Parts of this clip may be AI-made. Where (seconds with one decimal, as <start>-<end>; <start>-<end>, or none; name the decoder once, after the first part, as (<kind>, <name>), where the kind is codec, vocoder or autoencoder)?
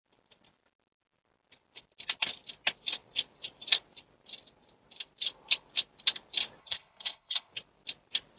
6.6-7.5 (codec, HILCodec)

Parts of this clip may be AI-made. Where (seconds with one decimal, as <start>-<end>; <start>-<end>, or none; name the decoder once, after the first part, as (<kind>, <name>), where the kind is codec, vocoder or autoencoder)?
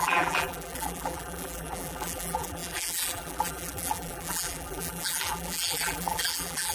0.0-6.7 (vocoder, BigVGAN v2)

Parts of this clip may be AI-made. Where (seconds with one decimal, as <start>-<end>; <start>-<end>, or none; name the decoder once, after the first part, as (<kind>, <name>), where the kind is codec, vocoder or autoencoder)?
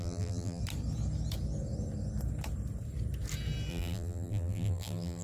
0.0-0.6 (vocoder, BigVGAN v2); 3.7-5.2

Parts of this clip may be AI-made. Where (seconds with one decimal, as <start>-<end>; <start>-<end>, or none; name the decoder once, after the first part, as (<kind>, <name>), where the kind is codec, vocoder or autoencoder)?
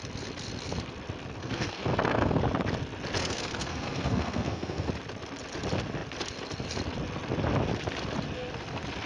1.4-2.4 (codec, SNAC); 3.2-4.9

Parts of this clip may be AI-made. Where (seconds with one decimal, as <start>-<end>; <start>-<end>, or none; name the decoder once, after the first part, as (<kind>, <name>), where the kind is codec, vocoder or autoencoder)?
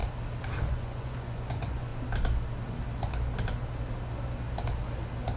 0.7-1.9 (vocoder, Vocos)